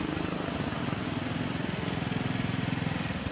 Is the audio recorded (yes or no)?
yes